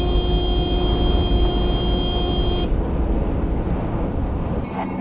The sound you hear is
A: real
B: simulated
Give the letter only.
A